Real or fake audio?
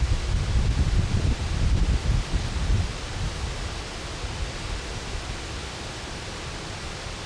real